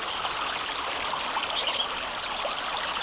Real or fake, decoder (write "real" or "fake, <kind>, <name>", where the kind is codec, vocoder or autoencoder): real